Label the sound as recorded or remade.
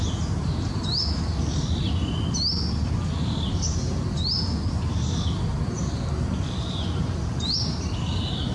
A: recorded